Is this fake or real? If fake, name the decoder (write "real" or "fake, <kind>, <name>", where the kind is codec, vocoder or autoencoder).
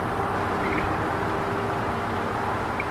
real